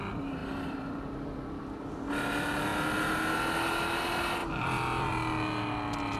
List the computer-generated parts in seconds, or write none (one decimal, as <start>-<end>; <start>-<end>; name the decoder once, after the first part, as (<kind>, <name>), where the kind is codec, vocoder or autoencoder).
0.4-1.9 (vocoder, BigVGAN v2); 4.4-5.1